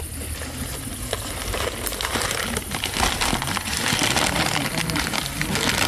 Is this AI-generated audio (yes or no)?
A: no